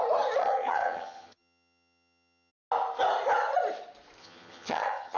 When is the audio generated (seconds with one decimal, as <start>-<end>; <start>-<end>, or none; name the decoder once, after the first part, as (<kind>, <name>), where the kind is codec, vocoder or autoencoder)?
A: 0.4-2.5 (vocoder, HiFi-GAN); 4.2-5.2